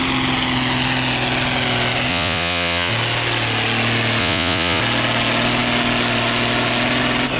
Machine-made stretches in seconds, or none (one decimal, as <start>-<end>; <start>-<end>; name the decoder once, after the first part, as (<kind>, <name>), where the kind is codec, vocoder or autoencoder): 2.1-2.9 (vocoder, Vocos); 4.2-4.8